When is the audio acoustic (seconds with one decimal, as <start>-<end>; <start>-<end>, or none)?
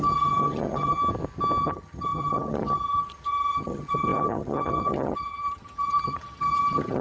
1.0-1.6